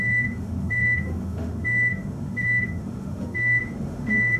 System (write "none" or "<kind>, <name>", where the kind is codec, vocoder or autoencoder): autoencoder, DAC-VAE